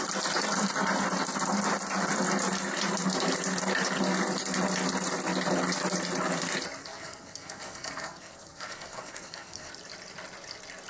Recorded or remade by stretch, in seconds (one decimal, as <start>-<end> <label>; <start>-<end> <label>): 0.0-6.8 recorded; 6.8-9.7 remade; 9.7-10.9 recorded